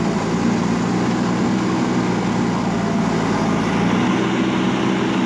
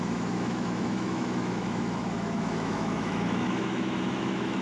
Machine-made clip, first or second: second